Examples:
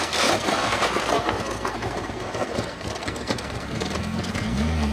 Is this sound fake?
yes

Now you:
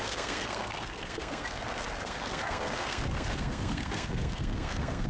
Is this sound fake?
yes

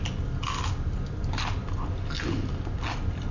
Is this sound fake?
no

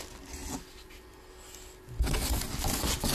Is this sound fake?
no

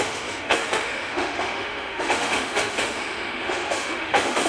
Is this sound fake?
yes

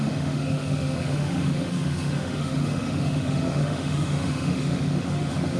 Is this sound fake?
yes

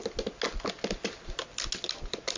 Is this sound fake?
no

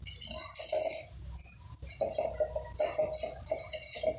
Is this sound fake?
no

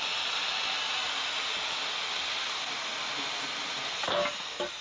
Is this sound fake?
no